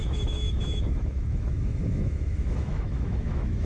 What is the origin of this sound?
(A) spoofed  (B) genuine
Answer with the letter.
A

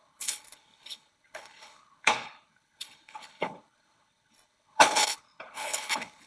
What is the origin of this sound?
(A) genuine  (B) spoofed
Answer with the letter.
B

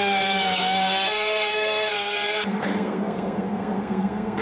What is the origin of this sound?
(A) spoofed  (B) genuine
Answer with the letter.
A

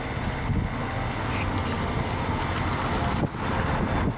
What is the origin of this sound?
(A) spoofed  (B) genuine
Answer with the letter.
B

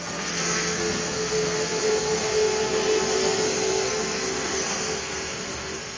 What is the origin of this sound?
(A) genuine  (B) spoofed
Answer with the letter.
B